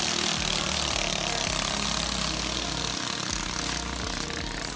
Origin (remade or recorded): recorded